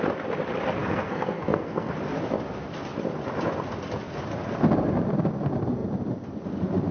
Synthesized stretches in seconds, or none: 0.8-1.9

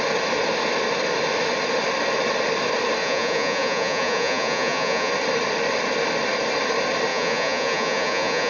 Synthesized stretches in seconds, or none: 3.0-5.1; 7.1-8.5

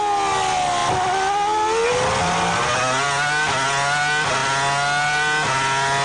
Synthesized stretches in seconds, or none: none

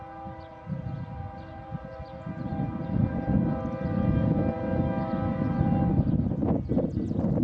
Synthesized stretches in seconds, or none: none

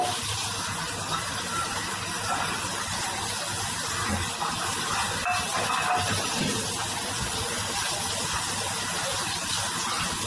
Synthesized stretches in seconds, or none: none

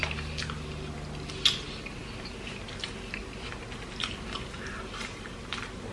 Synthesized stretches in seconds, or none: none

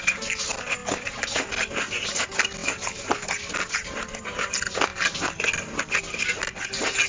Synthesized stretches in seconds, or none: none

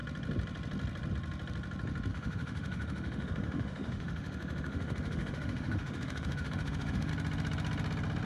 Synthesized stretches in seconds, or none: 2.1-7.1